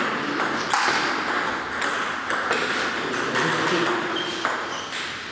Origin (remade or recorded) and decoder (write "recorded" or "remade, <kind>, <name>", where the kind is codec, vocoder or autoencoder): recorded